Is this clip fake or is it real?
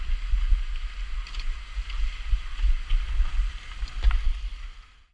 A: real